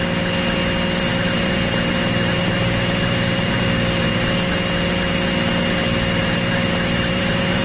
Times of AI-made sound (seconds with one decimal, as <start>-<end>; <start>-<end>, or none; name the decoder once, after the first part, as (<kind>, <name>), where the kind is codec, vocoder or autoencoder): 1.1-4.5 (vocoder, BigVGAN v2); 6.2-7.6